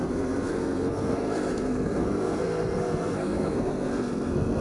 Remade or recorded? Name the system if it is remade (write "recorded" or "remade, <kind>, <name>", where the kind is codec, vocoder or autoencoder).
remade, codec, SNAC